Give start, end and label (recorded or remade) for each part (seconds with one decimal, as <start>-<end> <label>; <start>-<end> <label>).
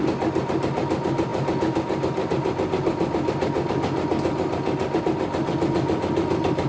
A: 0.0-6.7 recorded